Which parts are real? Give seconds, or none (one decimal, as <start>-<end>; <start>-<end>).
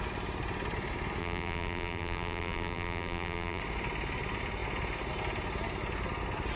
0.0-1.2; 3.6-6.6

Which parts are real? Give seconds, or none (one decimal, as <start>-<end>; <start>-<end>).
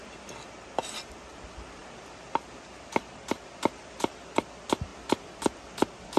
0.0-6.2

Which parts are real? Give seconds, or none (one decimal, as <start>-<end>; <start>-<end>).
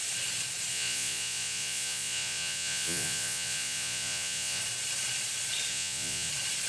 0.0-0.7; 4.6-5.7; 6.3-6.7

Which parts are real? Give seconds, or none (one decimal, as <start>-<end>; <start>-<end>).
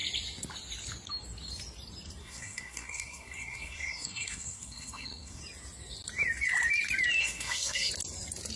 0.0-2.2; 5.4-7.2; 7.9-8.6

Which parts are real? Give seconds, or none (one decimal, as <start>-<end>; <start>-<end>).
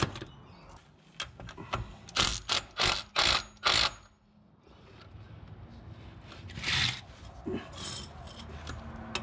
0.0-9.2